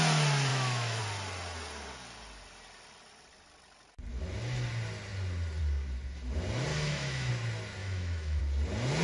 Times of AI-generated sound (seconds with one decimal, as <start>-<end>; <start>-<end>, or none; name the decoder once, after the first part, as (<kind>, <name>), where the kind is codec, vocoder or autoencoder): 0.5-1.0 (autoencoder, DAC-VAE); 6.7-7.3; 7.8-8.4